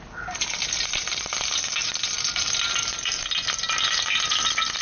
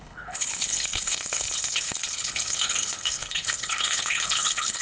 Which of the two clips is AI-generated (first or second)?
second